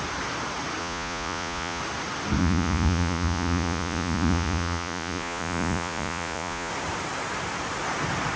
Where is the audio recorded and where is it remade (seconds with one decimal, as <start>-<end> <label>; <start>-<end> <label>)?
0.0-0.8 recorded; 0.8-1.8 remade; 1.8-2.4 recorded; 2.4-6.7 remade; 6.7-8.4 recorded